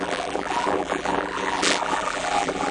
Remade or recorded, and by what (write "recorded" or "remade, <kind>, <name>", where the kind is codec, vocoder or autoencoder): remade, vocoder, BigVGAN v2